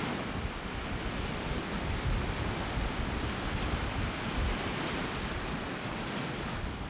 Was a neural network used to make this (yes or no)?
no